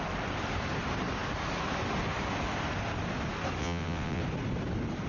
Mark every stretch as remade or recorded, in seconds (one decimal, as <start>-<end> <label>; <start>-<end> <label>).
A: 0.0-3.6 recorded; 3.6-4.2 remade; 4.2-5.1 recorded